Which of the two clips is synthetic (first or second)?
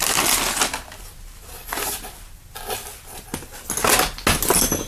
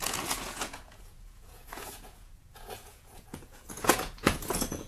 second